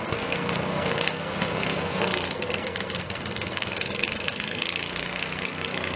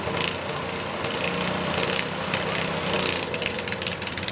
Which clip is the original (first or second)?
second